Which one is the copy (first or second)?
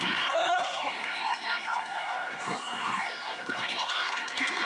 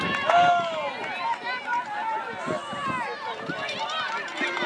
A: first